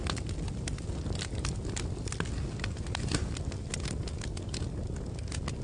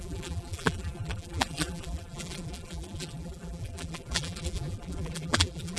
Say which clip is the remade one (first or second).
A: second